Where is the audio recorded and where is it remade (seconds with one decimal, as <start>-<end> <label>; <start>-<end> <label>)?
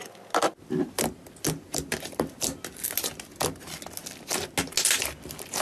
0.0-5.6 recorded